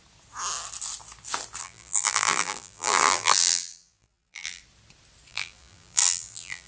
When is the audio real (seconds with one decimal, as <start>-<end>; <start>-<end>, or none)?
0.0-1.6; 4.6-5.3